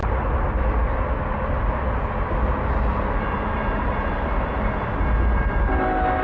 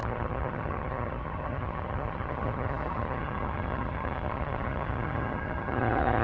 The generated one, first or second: second